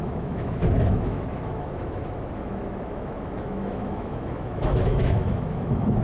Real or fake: fake